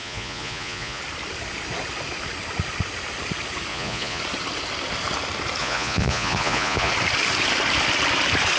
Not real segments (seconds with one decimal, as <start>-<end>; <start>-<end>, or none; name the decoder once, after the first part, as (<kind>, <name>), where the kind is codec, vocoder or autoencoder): 0.0-1.0 (vocoder, Vocos); 3.7-4.2; 5.6-6.9